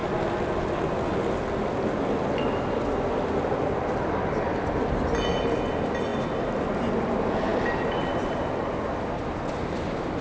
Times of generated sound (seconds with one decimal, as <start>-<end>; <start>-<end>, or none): none